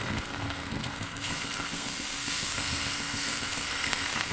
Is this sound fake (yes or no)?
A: yes